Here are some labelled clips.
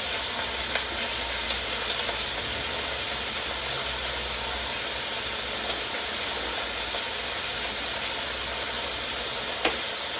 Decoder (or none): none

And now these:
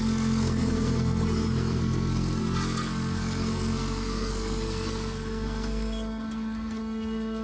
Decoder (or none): codec, SNAC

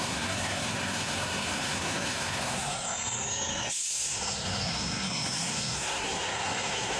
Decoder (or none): codec, SNAC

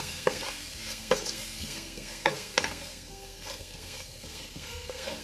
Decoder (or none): codec, SNAC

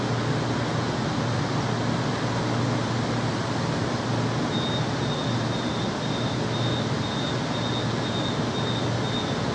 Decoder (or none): none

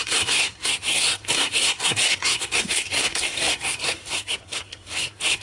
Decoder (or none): codec, SNAC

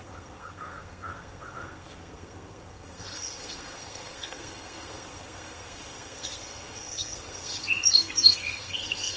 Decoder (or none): codec, SNAC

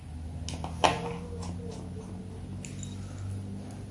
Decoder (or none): none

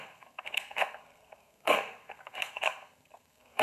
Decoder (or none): codec, SNAC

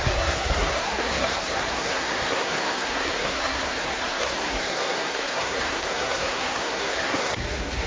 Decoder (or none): codec, SNAC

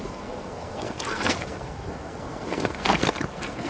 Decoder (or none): codec, SNAC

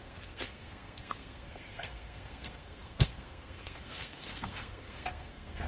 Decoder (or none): codec, SNAC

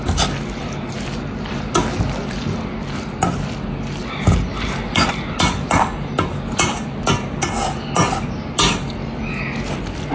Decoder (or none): none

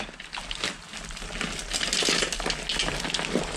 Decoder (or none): none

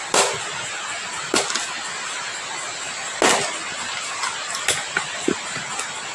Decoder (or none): none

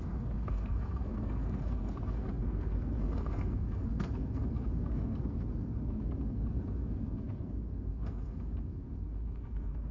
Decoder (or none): codec, SNAC